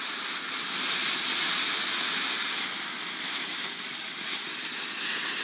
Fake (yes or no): no